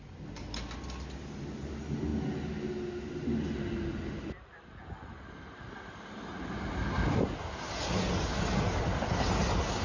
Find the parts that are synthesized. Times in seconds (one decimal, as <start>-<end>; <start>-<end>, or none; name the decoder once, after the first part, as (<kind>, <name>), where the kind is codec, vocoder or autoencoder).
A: none